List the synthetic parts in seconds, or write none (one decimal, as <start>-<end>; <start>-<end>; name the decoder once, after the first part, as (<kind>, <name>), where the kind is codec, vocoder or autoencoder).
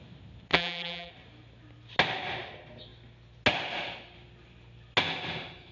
0.5-1.1 (vocoder, BigVGAN v2)